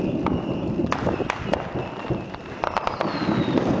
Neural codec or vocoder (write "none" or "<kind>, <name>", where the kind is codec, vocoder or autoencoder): none